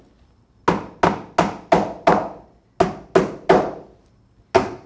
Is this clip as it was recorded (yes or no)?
yes